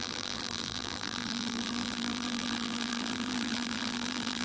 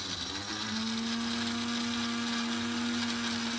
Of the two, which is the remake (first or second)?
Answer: first